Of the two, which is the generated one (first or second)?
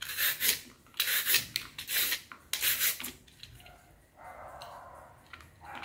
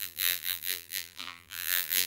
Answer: second